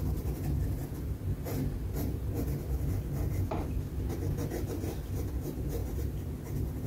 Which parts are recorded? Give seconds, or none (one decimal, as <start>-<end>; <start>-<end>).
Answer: 0.0-5.8; 6.3-6.9